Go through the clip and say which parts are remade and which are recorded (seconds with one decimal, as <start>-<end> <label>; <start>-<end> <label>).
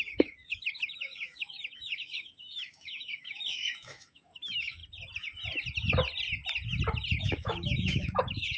0.0-4.8 remade; 4.8-7.2 recorded; 7.2-8.6 remade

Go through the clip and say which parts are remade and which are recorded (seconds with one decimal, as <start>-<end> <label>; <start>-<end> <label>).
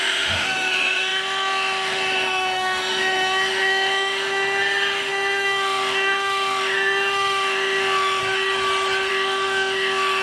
0.0-8.2 remade; 8.2-9.1 recorded; 9.1-10.2 remade